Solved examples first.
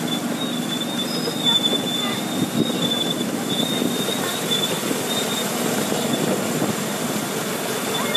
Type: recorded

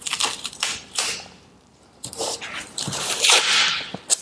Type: remade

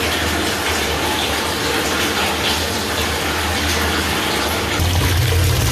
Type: recorded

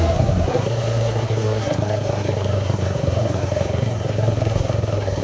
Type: remade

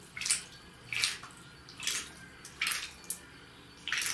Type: recorded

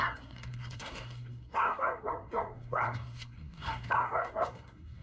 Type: remade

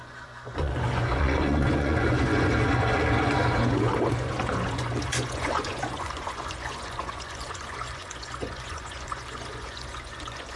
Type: remade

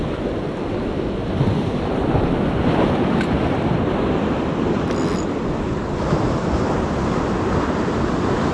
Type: recorded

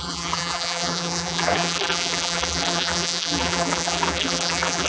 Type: remade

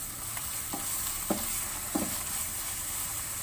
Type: recorded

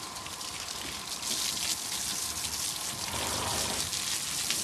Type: recorded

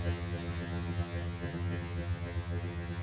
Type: remade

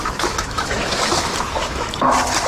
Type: remade